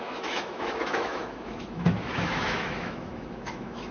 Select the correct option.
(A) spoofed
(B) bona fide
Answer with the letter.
A